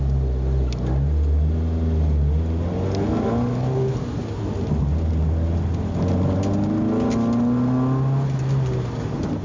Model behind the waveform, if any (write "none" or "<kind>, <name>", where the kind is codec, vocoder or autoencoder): none